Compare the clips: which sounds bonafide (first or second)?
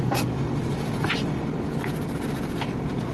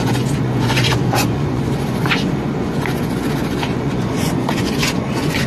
first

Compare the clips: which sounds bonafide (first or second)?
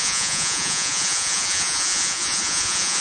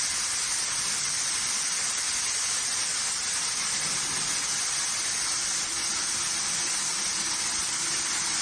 second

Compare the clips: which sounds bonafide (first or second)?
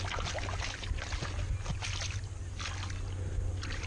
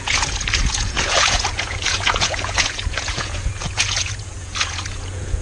first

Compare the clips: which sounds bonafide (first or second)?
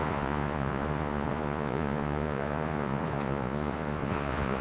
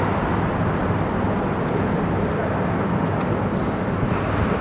second